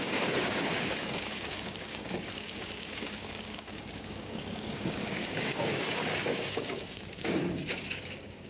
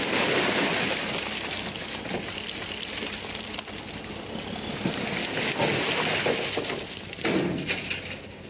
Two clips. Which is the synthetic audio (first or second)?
first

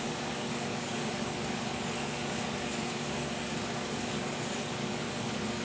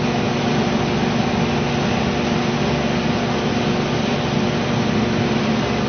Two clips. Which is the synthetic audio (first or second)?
first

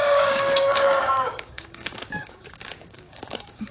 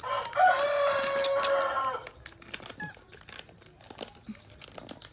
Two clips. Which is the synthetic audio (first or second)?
first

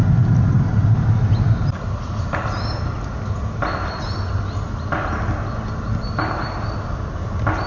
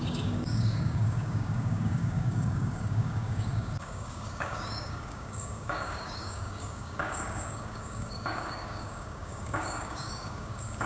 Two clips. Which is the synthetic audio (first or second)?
second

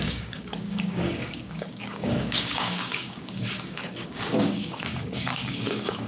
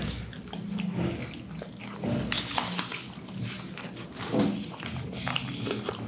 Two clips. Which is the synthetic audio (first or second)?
first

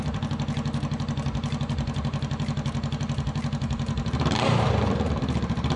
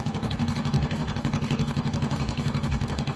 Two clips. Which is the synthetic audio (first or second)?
second